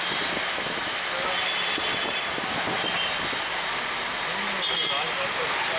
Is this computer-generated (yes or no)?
no